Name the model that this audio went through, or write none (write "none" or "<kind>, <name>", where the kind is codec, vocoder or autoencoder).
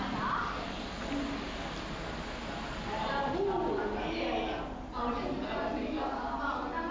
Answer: none